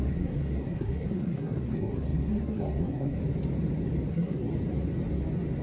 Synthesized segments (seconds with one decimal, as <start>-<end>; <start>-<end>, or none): 0.0-3.2; 4.1-4.5